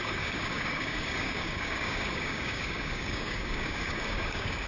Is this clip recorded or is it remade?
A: remade